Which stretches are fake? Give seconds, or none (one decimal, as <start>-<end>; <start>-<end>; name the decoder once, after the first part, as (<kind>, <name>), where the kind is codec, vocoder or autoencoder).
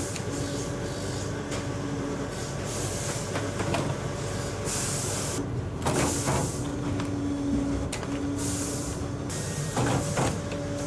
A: none